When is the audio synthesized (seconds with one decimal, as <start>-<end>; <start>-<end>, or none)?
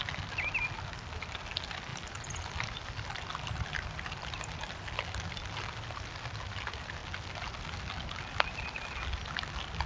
1.9-6.1